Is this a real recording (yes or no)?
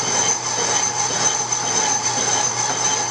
yes